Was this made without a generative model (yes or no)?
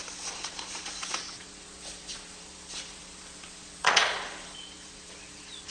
no